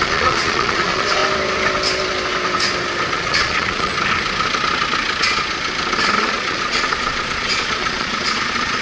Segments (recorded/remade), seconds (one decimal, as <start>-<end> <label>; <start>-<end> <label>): 0.0-1.2 remade; 1.2-3.1 recorded; 3.1-3.9 remade; 3.9-6.2 recorded; 6.2-8.8 remade